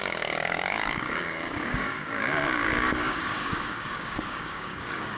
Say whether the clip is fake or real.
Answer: fake